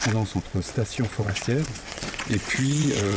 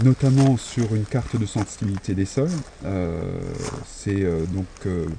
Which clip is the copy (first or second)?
first